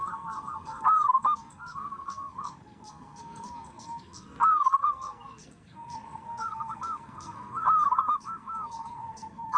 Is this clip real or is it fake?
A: fake